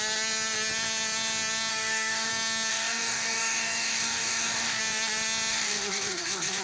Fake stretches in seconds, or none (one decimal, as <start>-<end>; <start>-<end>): 1.7-2.3; 2.7-4.8; 5.5-6.6